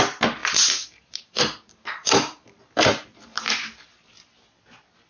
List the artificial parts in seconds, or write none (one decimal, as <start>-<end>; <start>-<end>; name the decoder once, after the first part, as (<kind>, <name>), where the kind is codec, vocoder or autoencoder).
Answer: 0.4-3.4 (vocoder, BigVGAN v2)